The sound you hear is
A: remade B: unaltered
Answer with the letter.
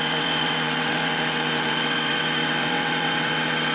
A